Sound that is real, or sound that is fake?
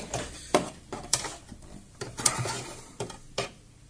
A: fake